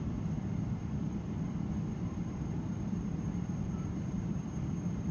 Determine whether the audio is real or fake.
fake